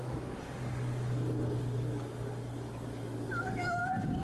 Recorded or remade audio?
remade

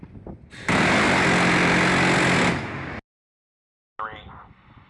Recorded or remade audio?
recorded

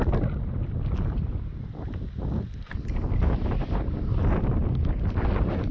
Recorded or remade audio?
recorded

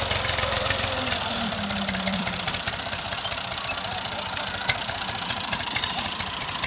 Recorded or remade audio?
remade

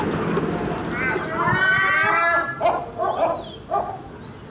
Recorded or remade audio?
recorded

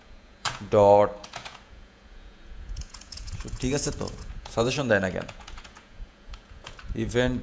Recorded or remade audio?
remade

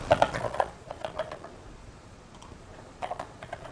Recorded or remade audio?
remade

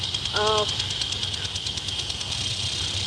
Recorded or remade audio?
recorded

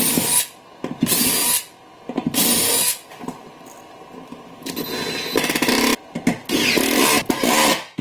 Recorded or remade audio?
recorded